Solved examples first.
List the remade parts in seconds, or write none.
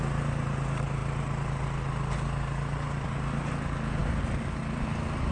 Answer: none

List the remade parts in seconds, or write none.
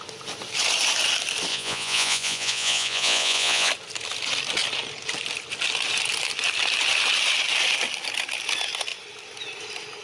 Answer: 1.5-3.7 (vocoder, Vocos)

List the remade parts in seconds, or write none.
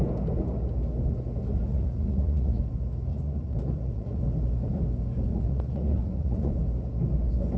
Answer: 1.7-2.6 (vocoder, Vocos); 3.1-4.2; 5.3-6.5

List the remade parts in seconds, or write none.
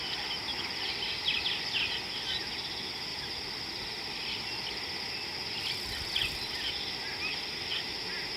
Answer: none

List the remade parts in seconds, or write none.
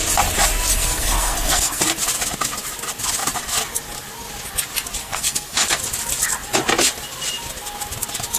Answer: 0.7-1.8 (codec, SNAC); 5.0-5.8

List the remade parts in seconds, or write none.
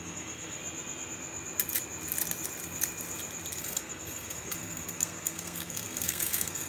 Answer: 0.0-0.6 (codec, SNAC); 3.6-6.7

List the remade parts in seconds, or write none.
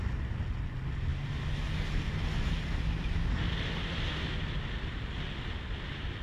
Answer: none